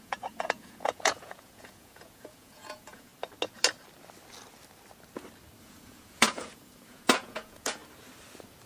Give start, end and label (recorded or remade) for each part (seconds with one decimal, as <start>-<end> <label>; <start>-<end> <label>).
0.0-3.1 remade; 3.1-5.6 recorded; 5.6-7.8 remade; 7.8-8.7 recorded